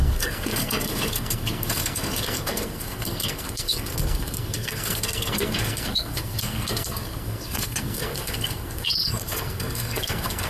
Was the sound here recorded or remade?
remade